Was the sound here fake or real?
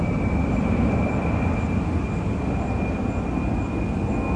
real